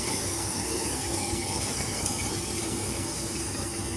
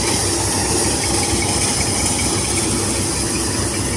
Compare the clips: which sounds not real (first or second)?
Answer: first